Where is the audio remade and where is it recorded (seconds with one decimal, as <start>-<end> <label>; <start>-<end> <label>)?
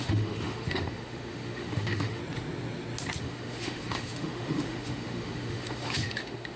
0.0-2.2 remade; 2.2-3.2 recorded; 3.2-6.6 remade